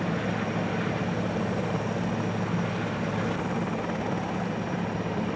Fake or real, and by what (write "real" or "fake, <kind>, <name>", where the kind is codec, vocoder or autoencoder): real